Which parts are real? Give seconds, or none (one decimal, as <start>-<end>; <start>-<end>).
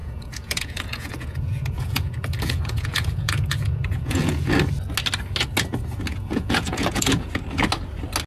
4.5-6.1; 7.3-8.3